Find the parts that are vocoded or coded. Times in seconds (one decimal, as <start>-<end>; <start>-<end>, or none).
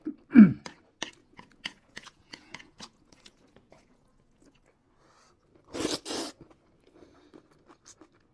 1.2-4.6